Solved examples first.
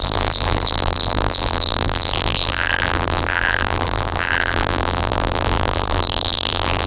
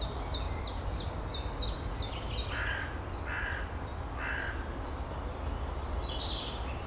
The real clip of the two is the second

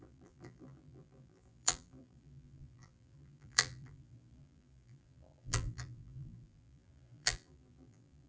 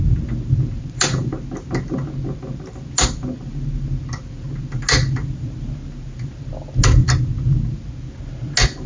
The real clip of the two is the second